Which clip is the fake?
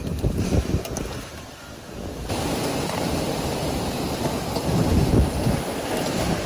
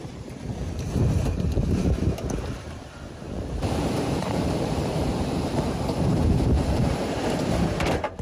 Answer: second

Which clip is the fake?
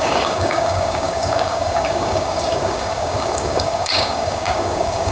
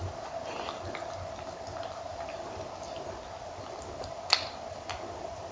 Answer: first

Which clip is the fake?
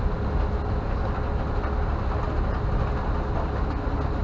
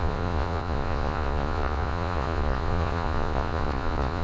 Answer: second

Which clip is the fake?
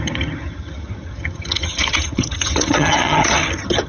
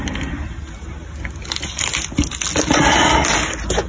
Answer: first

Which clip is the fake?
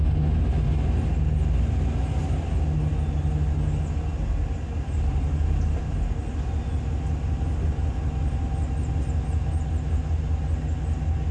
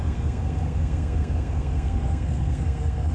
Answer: second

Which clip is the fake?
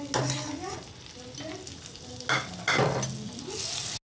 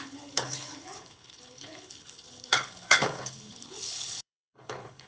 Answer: second